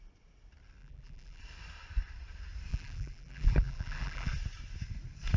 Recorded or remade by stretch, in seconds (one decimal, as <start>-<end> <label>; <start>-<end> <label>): 0.0-0.8 recorded; 0.8-1.4 remade; 1.4-2.7 recorded; 2.7-4.3 remade; 4.3-5.4 recorded